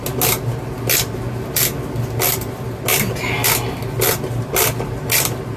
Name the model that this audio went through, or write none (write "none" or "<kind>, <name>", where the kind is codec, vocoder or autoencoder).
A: none